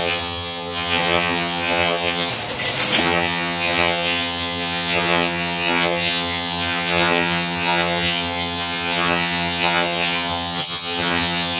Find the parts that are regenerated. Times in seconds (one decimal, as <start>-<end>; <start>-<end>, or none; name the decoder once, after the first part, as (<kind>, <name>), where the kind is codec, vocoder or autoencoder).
0.0-2.3 (vocoder, HiFi-GAN); 3.0-11.6